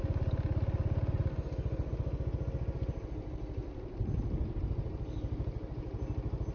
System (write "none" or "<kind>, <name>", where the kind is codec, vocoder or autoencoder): none